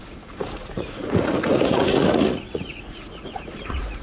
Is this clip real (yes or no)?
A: no